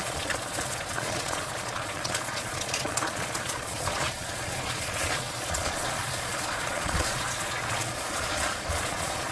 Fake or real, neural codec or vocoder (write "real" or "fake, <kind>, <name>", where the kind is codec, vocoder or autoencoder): fake, vocoder, Vocos